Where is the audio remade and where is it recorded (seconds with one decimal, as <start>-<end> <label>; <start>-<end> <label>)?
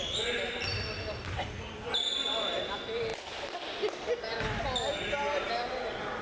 0.0-6.2 recorded